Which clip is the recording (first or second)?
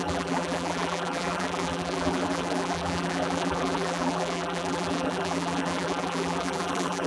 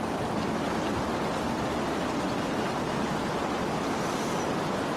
second